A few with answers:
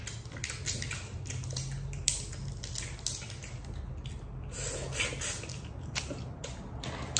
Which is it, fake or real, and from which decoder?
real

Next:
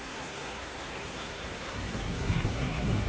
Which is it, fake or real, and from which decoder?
fake, codec, SNAC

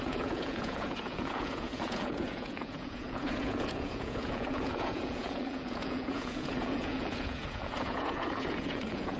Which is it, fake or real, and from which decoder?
fake, vocoder, Vocos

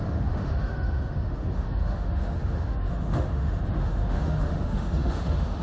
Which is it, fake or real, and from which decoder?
fake, autoencoder, DAC-VAE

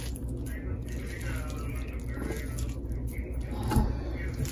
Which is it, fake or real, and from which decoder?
real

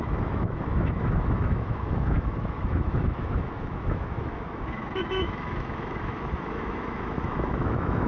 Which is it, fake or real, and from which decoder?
fake, autoencoder, DAC-VAE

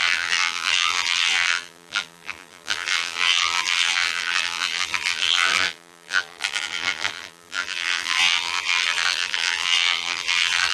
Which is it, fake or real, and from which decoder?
fake, vocoder, BigVGAN v2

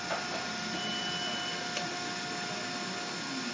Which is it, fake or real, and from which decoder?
real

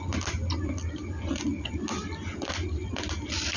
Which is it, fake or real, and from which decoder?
real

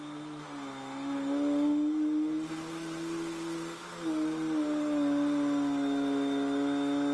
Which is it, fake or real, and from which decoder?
real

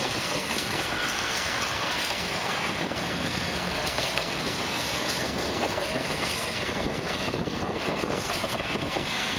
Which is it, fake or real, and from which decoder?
fake, codec, SNAC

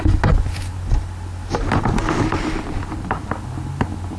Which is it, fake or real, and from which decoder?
real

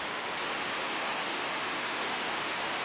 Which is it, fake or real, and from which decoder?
fake, autoencoder, DAC-VAE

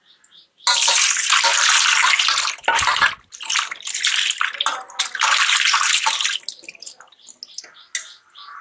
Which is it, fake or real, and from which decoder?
real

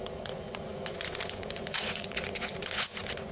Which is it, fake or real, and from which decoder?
fake, vocoder, Vocos